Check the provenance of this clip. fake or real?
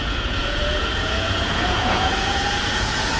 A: fake